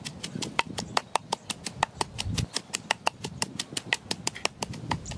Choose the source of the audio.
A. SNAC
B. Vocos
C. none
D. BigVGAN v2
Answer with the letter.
C